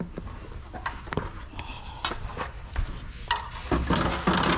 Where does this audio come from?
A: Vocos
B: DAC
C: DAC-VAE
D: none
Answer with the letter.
D